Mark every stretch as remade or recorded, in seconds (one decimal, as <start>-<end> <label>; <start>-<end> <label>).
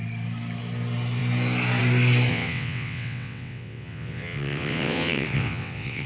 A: 0.0-2.3 recorded; 2.3-6.1 remade